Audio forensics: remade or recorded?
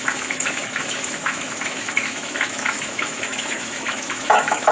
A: remade